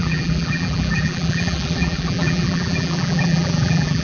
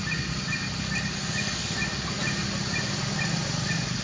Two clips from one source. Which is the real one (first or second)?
second